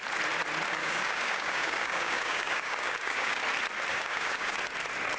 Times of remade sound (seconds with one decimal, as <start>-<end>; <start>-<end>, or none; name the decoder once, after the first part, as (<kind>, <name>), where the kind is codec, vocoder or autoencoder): 0.8-3.4 (codec, DAC); 3.9-4.6